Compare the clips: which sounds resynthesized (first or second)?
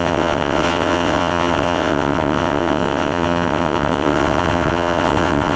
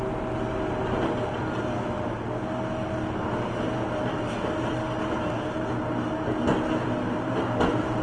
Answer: first